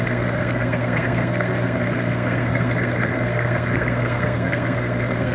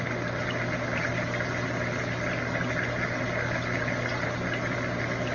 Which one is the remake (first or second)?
first